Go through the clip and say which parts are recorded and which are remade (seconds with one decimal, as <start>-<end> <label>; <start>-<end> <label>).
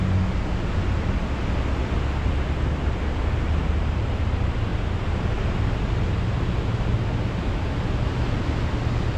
0.0-9.2 recorded